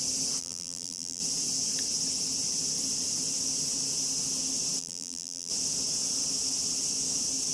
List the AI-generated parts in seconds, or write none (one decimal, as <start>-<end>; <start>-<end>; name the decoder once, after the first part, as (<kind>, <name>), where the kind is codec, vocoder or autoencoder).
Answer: 0.4-1.2 (vocoder, BigVGAN v2); 4.8-5.5